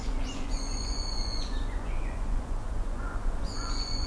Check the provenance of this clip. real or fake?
fake